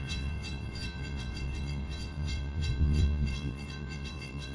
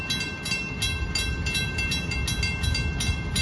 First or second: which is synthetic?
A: first